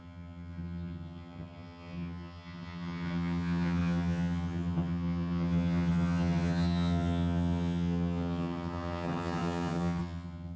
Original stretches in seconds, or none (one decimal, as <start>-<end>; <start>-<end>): none